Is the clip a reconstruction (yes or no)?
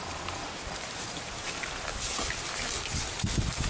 no